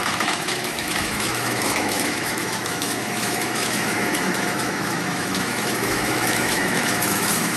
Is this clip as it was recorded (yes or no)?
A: no